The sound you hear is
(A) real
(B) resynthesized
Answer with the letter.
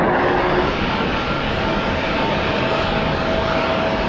B